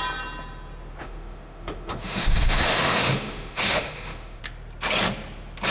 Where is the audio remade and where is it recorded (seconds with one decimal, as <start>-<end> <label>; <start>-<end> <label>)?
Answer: 0.0-1.0 recorded; 1.0-4.4 remade; 4.4-5.7 recorded